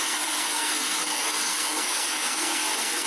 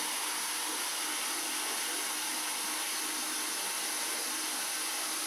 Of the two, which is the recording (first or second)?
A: second